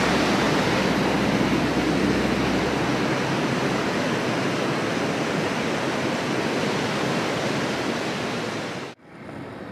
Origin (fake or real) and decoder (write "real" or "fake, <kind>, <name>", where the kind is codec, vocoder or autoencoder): real